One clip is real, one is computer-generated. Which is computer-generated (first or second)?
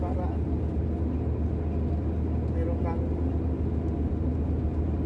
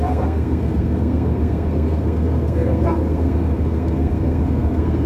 second